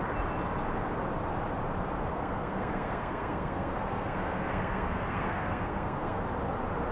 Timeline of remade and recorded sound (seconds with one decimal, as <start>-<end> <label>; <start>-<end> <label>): 0.0-2.1 recorded; 2.1-6.2 remade; 6.2-6.9 recorded